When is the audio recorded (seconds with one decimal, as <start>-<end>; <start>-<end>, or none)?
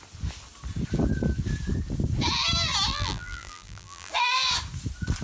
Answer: 0.0-2.9; 4.1-5.2